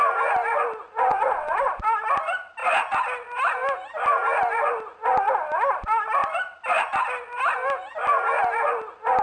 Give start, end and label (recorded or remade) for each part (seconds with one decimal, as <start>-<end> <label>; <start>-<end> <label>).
0.0-1.1 recorded; 1.1-1.7 remade; 1.7-9.2 recorded